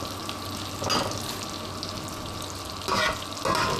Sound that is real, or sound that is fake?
real